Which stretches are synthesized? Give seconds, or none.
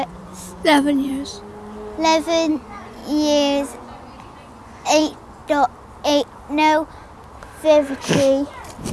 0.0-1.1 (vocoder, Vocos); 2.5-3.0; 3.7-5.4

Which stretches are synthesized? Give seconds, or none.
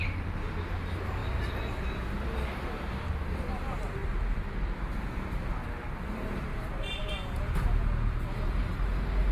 7.0-8.6 (vocoder, Vocos)